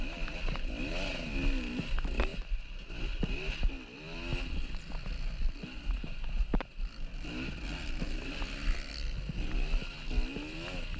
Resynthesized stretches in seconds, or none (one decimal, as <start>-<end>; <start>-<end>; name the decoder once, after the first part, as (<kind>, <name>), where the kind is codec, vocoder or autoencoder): none